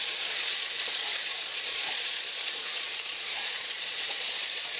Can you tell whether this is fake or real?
fake